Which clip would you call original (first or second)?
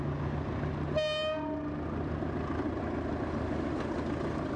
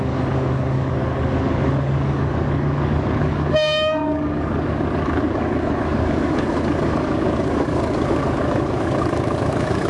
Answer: first